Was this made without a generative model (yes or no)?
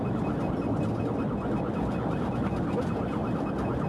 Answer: yes